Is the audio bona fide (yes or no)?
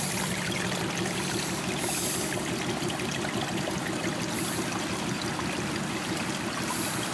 yes